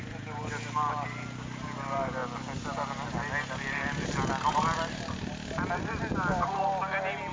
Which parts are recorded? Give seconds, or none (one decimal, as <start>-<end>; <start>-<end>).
0.0-7.3